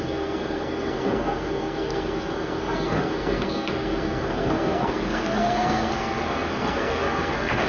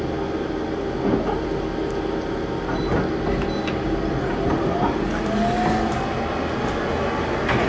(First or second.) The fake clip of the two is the first